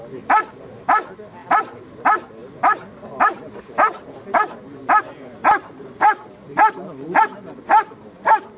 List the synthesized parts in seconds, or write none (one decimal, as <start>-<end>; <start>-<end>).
none